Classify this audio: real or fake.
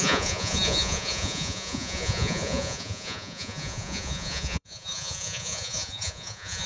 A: fake